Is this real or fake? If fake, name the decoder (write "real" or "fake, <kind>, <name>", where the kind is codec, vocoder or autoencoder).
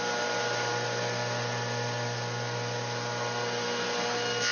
real